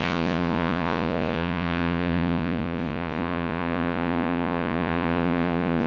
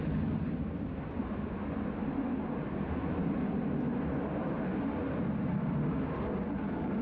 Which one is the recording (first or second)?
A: second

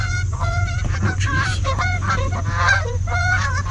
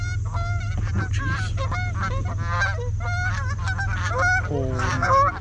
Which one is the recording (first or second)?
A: second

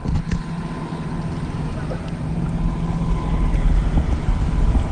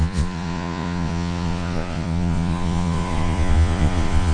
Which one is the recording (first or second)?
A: first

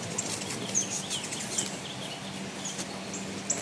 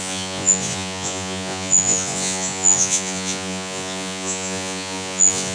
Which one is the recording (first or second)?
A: first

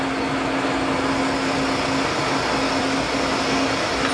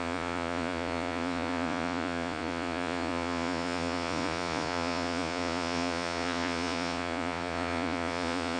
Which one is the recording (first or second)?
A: first